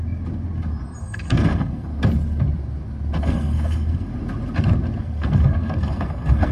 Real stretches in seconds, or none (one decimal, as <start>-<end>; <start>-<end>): 0.0-1.0; 1.9-3.2; 4.1-5.0